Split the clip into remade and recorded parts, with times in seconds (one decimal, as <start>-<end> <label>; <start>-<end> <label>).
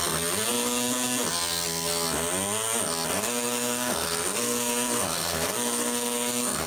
0.0-3.1 recorded; 3.1-6.7 remade